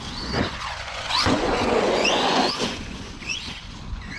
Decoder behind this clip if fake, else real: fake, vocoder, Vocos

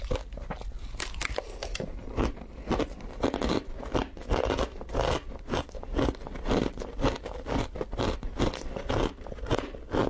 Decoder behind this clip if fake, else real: real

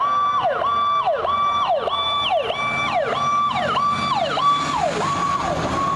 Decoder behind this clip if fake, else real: real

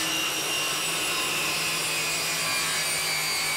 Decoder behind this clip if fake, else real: real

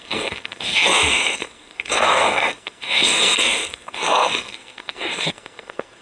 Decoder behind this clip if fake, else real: fake, codec, SNAC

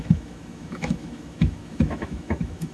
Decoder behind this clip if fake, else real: fake, autoencoder, DAC-VAE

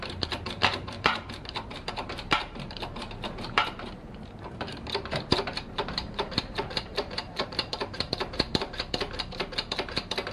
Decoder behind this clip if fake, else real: fake, vocoder, BigVGAN v2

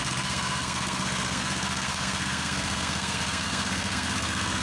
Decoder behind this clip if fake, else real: fake, codec, SNAC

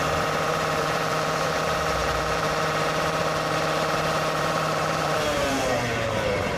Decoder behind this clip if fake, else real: fake, vocoder, BigVGAN v2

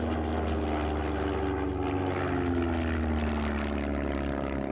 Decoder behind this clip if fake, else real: real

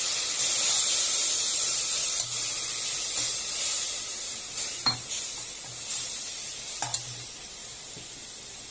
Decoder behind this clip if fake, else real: real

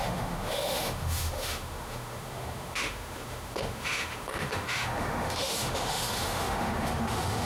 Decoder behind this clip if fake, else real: fake, autoencoder, DAC-VAE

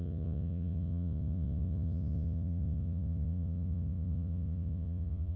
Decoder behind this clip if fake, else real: fake, vocoder, Vocos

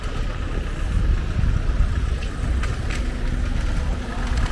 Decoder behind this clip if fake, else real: real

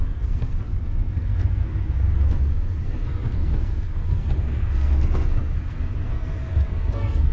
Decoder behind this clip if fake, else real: fake, codec, SNAC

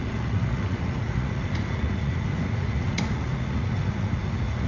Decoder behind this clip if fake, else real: fake, vocoder, Vocos